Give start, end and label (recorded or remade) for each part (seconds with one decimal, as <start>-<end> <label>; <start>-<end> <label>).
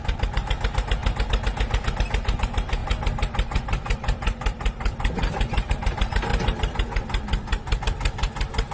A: 0.0-8.7 recorded